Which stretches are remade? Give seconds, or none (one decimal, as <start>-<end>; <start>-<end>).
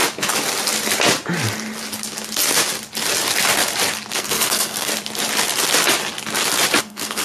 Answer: 4.1-4.9; 6.8-7.2